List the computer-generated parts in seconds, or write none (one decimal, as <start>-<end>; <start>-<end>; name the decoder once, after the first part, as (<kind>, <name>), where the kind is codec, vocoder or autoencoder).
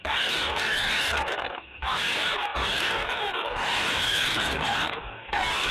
0.0-5.7 (codec, DAC)